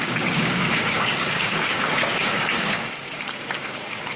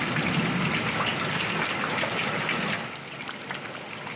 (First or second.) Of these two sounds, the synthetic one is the first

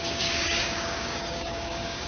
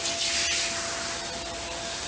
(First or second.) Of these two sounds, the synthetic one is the first